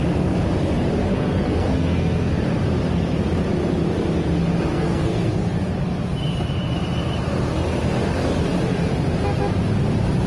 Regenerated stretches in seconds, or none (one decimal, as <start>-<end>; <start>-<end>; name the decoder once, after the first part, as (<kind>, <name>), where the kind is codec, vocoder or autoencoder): 1.1-2.3 (codec, SNAC); 4.7-5.3